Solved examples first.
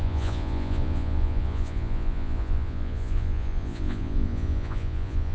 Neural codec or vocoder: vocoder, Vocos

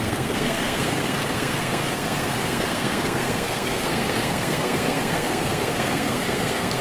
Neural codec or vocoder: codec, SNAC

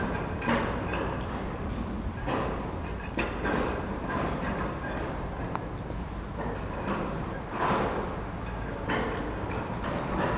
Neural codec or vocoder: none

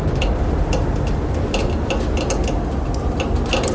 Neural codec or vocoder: none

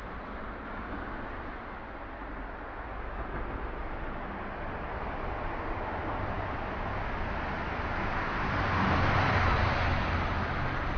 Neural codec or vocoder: none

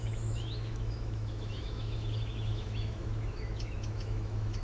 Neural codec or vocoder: autoencoder, DAC-VAE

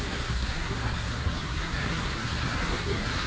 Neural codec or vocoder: codec, SNAC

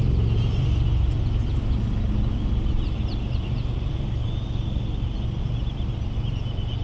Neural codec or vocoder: none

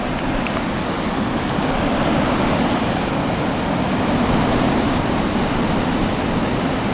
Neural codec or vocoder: none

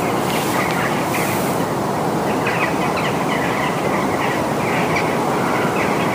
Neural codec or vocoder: none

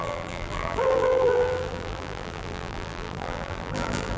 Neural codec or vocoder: vocoder, BigVGAN v2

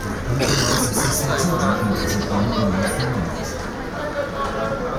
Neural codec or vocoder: none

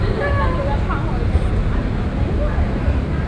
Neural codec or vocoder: none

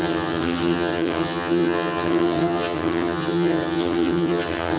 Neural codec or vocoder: vocoder, HiFi-GAN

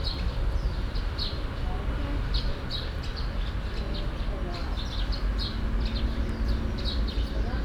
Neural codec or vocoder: none